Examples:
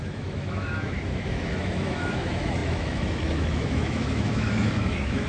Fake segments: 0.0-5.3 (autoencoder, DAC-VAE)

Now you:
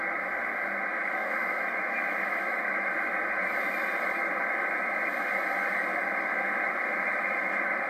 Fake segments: 1.2-2.9 (autoencoder, DAC-VAE)

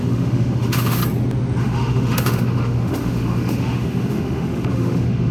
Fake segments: 0.0-1.0 (autoencoder, DAC-VAE); 1.6-5.3

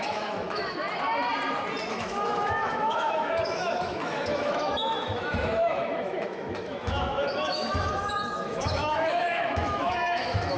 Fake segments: 0.0-0.6 (autoencoder, DAC-VAE); 1.9-10.6

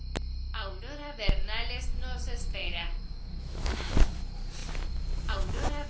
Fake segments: 2.6-3.9 (autoencoder, DAC-VAE)

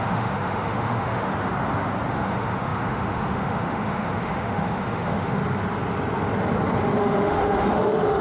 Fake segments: 0.0-1.3 (autoencoder, DAC-VAE); 2.1-5.4; 7.0-8.2